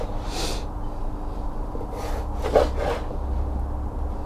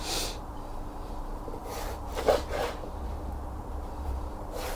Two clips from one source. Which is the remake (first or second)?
second